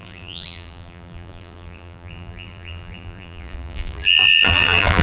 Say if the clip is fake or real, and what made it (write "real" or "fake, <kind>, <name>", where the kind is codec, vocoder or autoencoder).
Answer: fake, vocoder, BigVGAN v2